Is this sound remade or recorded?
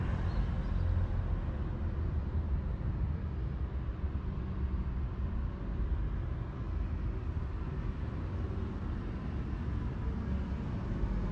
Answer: recorded